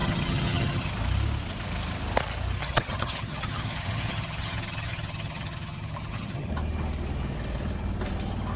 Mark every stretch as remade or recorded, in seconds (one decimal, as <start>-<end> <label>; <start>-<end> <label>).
0.0-0.9 remade; 0.9-2.6 recorded; 2.6-6.5 remade; 6.5-8.6 recorded